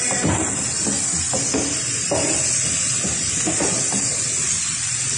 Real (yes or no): yes